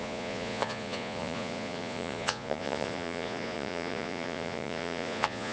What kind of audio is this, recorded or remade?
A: remade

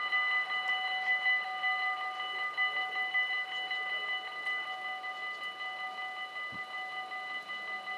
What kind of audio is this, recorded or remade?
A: recorded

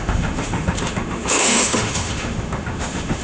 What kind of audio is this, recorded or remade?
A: remade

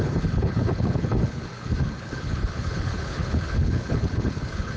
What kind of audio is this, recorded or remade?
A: remade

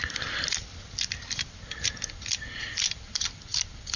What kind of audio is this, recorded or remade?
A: recorded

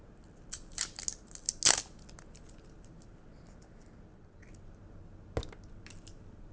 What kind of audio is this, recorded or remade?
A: recorded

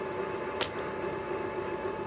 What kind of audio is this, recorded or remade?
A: recorded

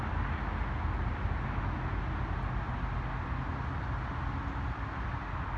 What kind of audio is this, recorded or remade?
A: recorded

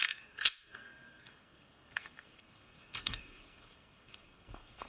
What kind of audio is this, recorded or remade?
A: remade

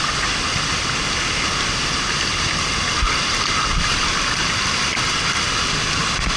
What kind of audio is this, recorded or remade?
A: recorded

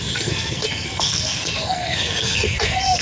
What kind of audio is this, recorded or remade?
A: remade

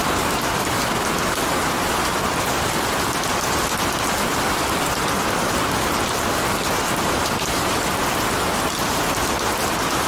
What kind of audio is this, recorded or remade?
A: recorded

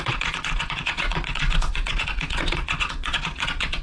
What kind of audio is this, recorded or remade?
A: remade